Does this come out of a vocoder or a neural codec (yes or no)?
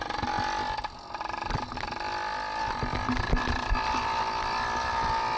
no